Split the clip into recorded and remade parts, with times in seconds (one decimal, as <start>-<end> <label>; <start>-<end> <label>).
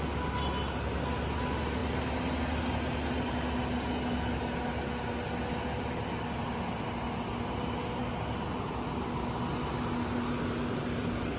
0.0-11.4 recorded